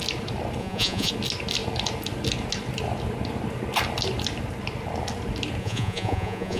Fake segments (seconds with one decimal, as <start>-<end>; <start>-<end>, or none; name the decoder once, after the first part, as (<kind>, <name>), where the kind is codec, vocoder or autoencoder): 0.6-1.1 (vocoder, Vocos); 5.6-6.6